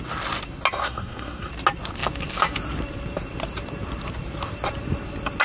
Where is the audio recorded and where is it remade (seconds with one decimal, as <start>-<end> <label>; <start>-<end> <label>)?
0.0-0.8 recorded; 0.8-1.5 remade; 1.5-5.4 recorded